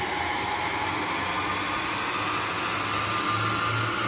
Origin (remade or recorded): recorded